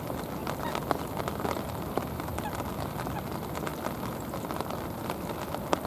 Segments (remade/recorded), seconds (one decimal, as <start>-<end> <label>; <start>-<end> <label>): 0.0-5.9 recorded